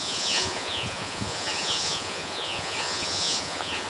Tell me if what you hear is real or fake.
fake